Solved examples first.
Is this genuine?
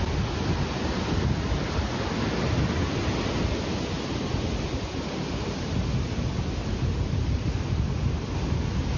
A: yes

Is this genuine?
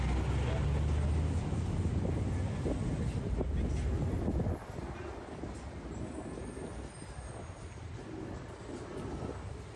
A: yes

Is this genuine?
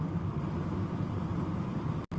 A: yes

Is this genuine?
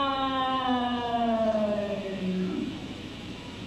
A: no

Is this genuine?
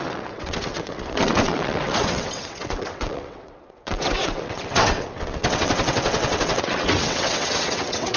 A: no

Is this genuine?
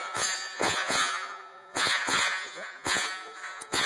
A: no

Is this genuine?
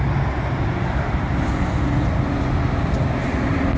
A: yes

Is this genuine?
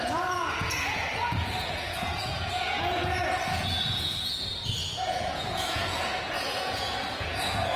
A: no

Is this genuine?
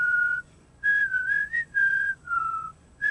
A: no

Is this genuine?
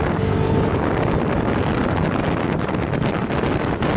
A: yes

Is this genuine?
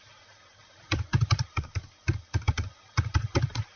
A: no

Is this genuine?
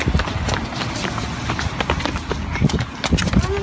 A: yes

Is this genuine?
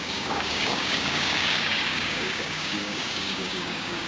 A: no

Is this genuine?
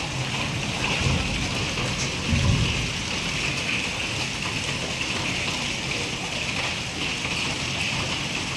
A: yes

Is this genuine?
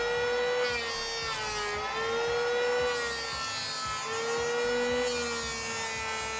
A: yes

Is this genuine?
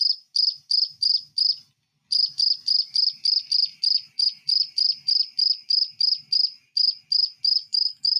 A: yes